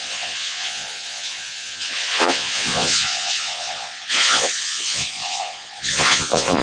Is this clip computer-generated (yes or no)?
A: yes